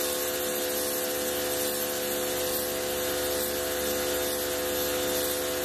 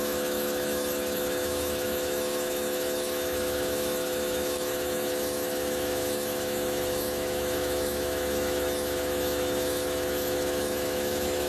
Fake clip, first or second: second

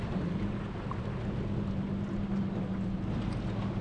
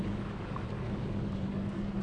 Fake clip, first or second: second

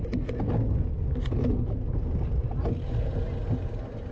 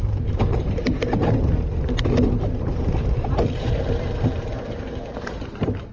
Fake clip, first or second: second